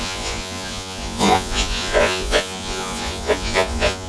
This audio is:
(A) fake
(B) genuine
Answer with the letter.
A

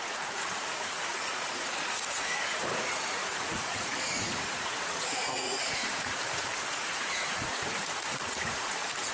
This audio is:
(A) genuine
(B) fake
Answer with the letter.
B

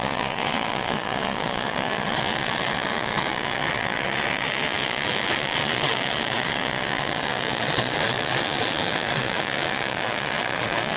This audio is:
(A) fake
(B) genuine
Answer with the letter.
A